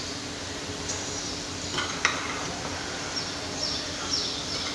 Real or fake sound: real